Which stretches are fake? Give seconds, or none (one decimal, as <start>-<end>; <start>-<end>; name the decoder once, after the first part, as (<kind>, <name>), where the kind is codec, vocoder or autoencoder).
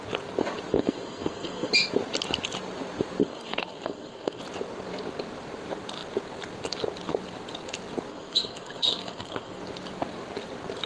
0.7-1.7 (codec, SNAC); 3.2-4.4; 8.1-9.6